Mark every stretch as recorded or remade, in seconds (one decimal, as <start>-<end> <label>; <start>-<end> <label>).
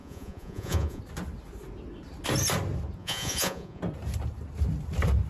0.0-1.0 remade; 1.0-3.0 recorded; 3.0-3.8 remade; 3.8-5.3 recorded